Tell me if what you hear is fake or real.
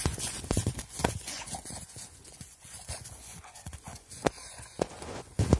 fake